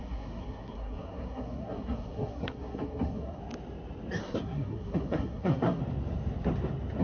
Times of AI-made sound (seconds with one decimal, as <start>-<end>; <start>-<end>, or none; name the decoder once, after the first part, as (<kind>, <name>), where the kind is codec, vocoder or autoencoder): 0.0-3.4 (codec, SNAC); 4.2-5.8